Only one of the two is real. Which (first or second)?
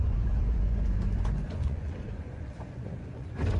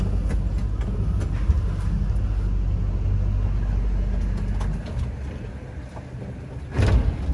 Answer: second